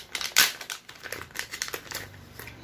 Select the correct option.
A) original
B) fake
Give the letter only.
A